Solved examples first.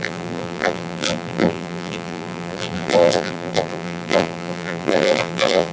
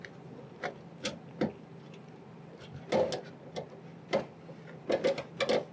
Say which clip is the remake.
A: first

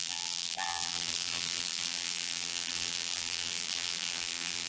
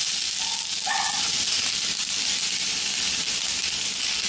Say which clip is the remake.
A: first